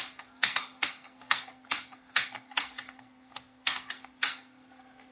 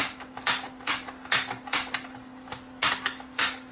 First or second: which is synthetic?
first